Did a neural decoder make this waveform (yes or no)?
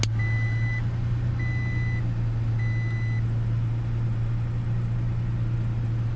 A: no